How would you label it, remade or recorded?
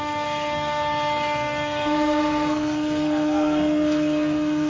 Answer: remade